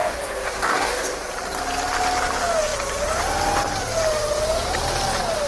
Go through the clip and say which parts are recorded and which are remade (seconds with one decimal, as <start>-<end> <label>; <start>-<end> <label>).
0.0-1.3 remade; 1.3-5.5 recorded